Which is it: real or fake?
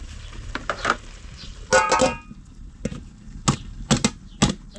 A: real